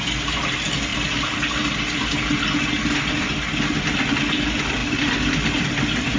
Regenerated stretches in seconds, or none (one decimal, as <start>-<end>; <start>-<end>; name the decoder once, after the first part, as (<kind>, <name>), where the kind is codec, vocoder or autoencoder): none